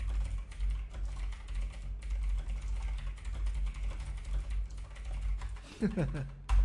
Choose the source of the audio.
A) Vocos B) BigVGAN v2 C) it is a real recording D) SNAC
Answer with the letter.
C